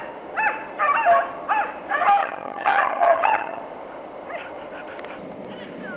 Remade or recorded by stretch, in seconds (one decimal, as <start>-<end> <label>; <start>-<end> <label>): 0.0-2.2 recorded; 2.2-3.6 remade; 3.6-6.0 recorded